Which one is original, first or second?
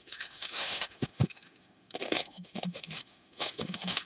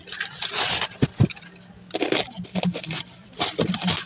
second